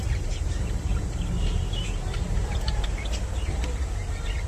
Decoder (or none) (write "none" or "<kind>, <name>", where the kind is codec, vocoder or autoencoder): vocoder, BigVGAN v2